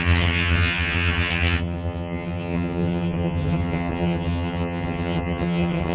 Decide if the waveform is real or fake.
fake